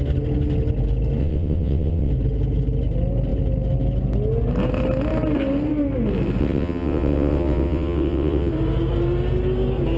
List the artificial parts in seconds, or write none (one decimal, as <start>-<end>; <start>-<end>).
1.2-2.1; 6.4-8.5